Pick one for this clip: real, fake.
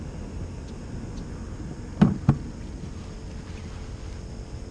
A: real